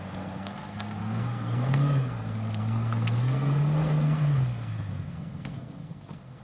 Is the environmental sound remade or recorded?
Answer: remade